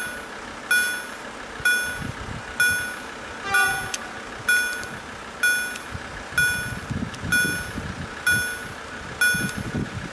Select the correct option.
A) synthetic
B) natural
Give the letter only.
B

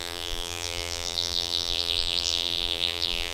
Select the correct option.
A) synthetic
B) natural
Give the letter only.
A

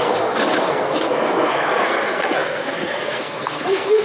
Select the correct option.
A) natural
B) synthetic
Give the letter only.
B